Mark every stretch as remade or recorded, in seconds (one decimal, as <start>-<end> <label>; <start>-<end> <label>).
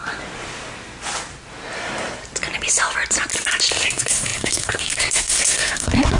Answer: 0.0-3.7 recorded; 3.7-6.2 remade